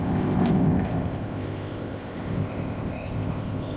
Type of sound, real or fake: fake